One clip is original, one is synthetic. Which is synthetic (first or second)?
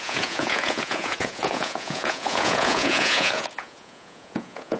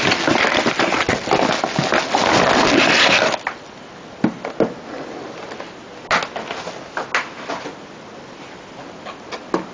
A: first